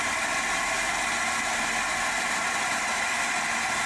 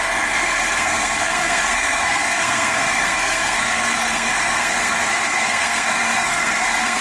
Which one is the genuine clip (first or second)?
first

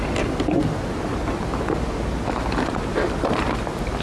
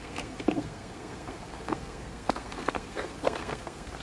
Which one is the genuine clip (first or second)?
first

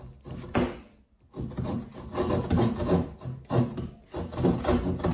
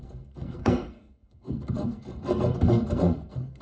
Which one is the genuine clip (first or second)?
first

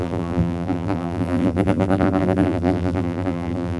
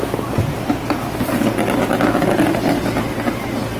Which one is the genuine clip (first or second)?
second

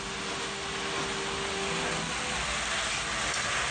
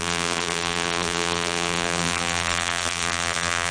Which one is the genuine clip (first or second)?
first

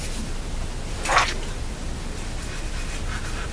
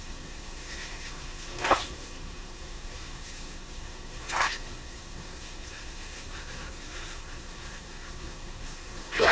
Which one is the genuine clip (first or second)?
first